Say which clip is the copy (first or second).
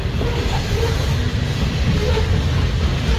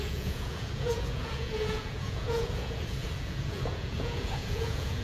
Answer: second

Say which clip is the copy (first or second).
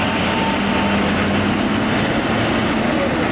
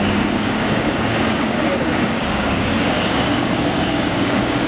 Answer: second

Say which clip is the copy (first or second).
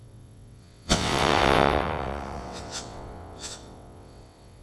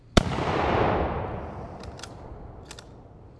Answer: first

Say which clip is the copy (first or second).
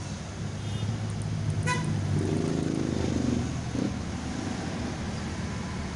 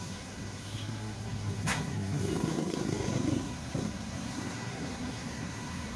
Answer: second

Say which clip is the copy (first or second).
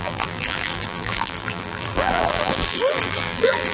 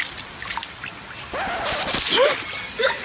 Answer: first